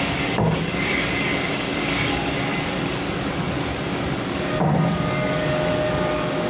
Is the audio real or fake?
fake